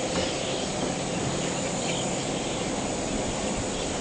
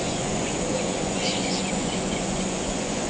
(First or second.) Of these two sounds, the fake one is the second